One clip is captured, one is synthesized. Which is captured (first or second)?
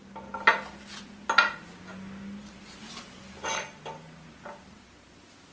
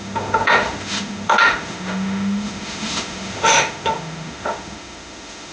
first